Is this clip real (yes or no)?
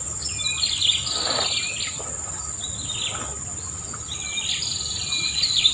yes